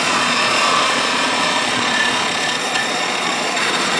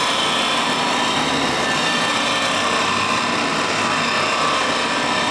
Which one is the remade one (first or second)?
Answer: first